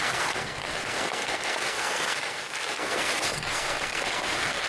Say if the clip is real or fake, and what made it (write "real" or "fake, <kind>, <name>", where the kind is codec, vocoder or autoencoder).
fake, codec, SNAC